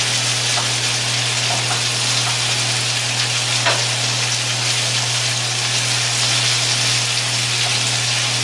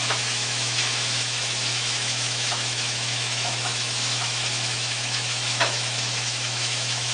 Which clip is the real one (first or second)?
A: first